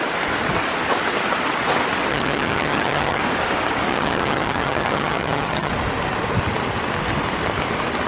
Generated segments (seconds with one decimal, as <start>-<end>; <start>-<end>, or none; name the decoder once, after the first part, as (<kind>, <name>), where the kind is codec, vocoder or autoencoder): 2.1-3.2 (vocoder, HiFi-GAN); 3.9-5.7